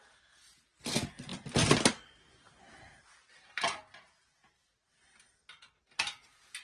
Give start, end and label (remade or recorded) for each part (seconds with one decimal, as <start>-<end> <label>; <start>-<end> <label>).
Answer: 0.0-6.6 recorded

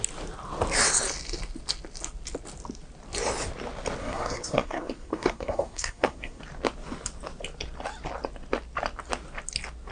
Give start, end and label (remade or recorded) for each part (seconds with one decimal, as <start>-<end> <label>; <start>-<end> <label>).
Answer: 0.0-4.0 recorded; 4.0-6.4 remade; 6.4-9.9 recorded

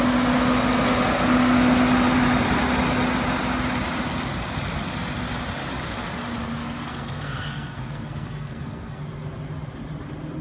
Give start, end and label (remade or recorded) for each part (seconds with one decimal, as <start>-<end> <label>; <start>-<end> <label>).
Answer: 0.0-6.6 recorded; 6.6-9.0 remade; 9.0-10.4 recorded

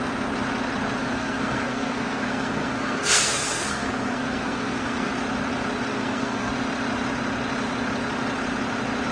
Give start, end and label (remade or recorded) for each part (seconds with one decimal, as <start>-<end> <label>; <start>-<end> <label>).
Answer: 0.0-1.0 recorded; 1.0-5.1 remade; 5.1-5.9 recorded; 5.9-6.5 remade; 6.5-9.1 recorded

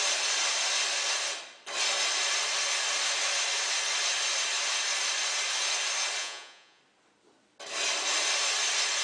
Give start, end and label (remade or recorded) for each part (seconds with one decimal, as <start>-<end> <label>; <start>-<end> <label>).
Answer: 0.0-6.2 recorded; 6.2-6.8 remade; 6.8-9.0 recorded

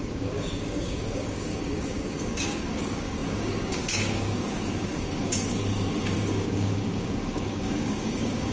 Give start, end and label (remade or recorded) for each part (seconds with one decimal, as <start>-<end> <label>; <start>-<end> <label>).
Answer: 0.0-8.5 remade

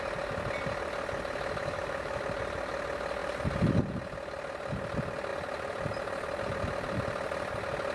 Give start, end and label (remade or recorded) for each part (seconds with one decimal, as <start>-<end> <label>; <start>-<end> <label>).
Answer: 0.0-1.6 recorded; 1.6-2.2 remade; 2.2-7.9 recorded

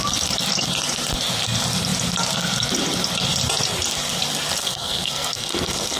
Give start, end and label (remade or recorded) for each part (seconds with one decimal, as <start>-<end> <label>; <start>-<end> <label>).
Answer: 0.0-4.6 recorded; 4.6-6.0 remade